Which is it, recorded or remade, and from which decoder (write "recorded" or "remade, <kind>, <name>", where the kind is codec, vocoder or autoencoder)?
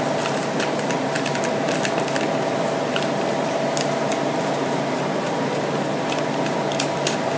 recorded